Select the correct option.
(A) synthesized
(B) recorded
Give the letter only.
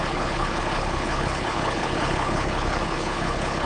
A